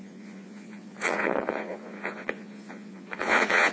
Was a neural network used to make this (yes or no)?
yes